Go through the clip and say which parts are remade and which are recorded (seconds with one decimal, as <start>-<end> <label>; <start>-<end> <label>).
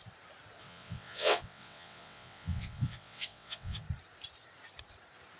0.0-0.6 recorded; 0.6-3.8 remade; 3.8-5.4 recorded